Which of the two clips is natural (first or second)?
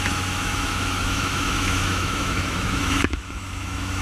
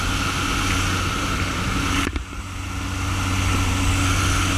second